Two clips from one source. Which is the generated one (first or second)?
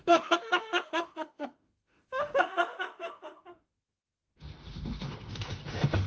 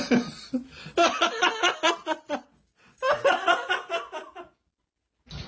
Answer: first